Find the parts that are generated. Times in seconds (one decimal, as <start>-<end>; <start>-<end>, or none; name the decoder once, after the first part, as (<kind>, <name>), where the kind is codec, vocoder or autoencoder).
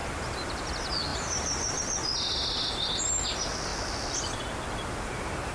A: 0.0-0.7 (vocoder, BigVGAN v2); 1.1-1.8